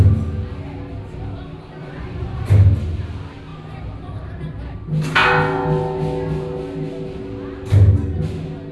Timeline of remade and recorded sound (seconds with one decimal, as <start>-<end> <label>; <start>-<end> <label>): 0.0-1.8 recorded; 1.8-2.5 remade; 2.5-8.7 recorded